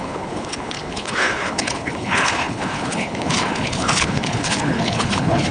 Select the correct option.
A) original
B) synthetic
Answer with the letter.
B